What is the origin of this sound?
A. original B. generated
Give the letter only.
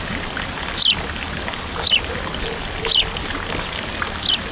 A